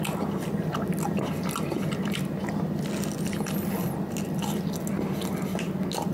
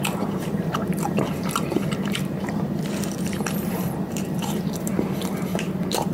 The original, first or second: first